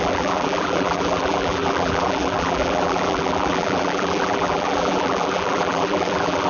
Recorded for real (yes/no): no